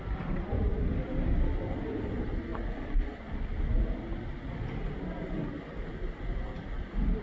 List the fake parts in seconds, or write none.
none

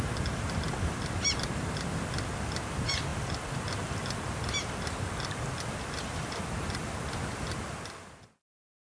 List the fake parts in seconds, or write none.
none

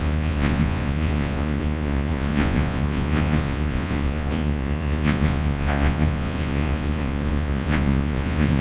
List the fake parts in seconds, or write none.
0.0-8.6 (vocoder, Vocos)

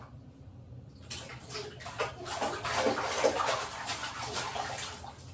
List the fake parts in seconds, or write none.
none

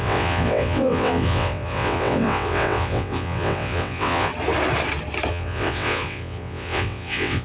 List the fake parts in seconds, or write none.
0.0-4.3 (vocoder, WaveNeXt); 5.3-7.4

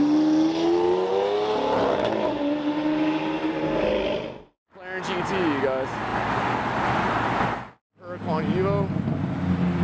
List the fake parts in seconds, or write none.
none

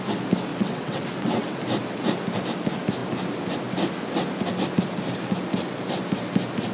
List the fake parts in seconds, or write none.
0.5-1.6 (vocoder, WaveNeXt)

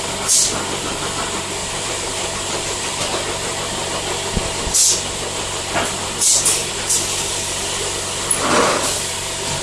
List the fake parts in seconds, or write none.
1.6-3.0 (vocoder, BigVGAN v2)